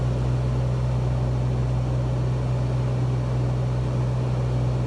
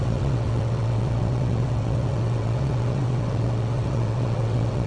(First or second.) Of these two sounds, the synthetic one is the second